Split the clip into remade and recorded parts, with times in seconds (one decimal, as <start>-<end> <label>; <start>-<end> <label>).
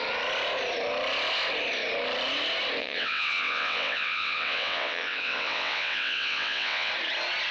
0.0-2.8 recorded; 2.8-6.9 remade; 6.9-7.5 recorded